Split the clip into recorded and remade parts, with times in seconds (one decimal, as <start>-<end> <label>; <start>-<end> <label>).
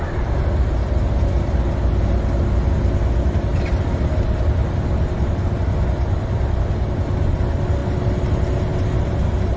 0.0-9.6 recorded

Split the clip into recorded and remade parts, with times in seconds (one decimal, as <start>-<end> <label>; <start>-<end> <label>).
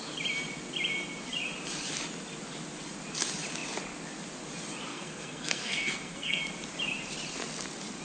0.0-4.9 recorded; 4.9-6.4 remade; 6.4-8.0 recorded